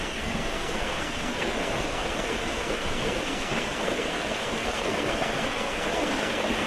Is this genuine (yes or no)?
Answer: no